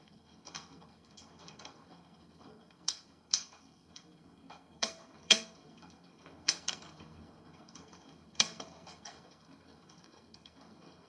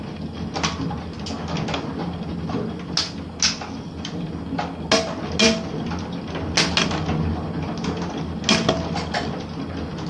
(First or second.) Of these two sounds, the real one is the second